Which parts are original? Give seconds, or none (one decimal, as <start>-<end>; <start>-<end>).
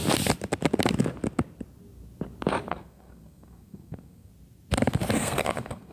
0.0-2.7; 4.3-5.2